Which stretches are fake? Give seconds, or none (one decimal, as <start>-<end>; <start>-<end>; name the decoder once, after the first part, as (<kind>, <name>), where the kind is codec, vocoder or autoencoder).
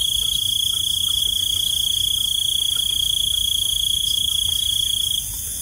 3.0-4.3 (autoencoder, DAC-VAE)